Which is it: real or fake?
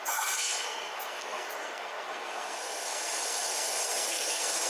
fake